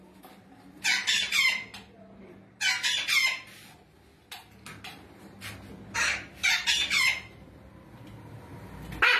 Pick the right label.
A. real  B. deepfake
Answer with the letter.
A